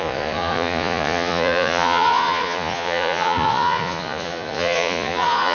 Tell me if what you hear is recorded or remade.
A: remade